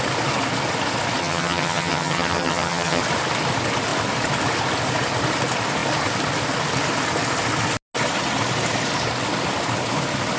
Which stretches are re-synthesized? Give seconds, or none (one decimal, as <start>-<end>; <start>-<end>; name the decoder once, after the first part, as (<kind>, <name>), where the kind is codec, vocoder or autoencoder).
1.2-3.0 (vocoder, HiFi-GAN)